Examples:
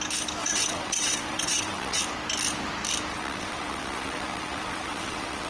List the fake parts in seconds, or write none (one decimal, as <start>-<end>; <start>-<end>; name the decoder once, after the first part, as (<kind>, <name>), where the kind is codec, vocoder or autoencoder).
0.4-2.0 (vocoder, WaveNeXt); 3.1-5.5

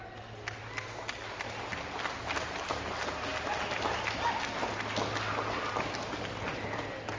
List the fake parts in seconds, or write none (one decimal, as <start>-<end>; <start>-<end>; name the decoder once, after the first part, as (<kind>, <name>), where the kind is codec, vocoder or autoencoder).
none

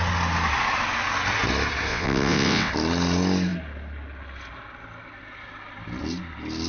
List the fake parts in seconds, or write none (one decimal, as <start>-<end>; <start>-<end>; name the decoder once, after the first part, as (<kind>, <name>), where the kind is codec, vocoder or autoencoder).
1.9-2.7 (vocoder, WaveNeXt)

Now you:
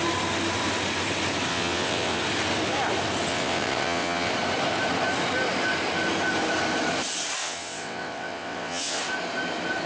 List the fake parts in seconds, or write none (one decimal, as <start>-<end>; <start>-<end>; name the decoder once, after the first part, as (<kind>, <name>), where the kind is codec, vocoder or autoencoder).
1.5-2.2 (vocoder, WaveNeXt); 3.3-4.3; 7.4-9.0

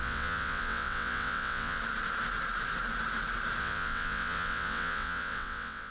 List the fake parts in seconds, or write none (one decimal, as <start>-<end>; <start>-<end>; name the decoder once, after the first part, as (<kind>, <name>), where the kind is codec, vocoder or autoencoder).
0.0-1.8 (vocoder, WaveNeXt); 3.6-5.9